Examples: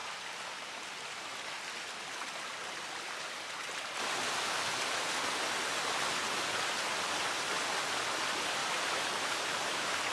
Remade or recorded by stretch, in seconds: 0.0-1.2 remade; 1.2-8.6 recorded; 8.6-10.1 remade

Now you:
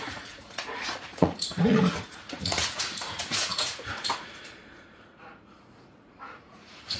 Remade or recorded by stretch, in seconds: 0.0-7.0 remade

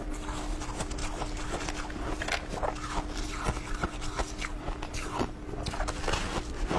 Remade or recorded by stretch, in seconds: 0.0-6.8 recorded

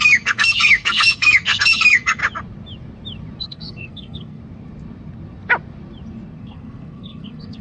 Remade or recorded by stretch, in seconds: 0.0-2.2 remade; 2.2-3.4 recorded; 3.4-4.4 remade; 4.4-6.4 recorded; 6.4-7.6 remade

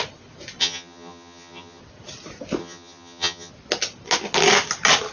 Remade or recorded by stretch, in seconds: 0.0-0.6 recorded; 0.6-1.8 remade; 1.8-2.6 recorded; 2.6-3.5 remade; 3.5-5.1 recorded

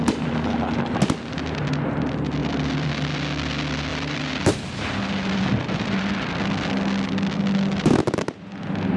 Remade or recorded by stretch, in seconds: 0.0-2.4 recorded; 2.4-2.9 remade; 2.9-3.9 recorded; 3.9-6.3 remade; 6.3-9.0 recorded

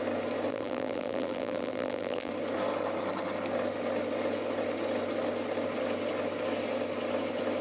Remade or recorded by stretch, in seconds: 0.0-0.5 recorded; 0.5-2.3 remade; 2.3-7.6 recorded